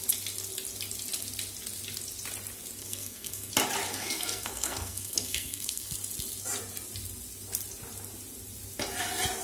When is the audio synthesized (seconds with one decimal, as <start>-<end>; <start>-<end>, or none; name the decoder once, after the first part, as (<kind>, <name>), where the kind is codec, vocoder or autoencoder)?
2.8-3.5 (codec, SNAC); 3.9-5.9